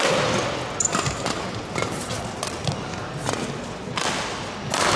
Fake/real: real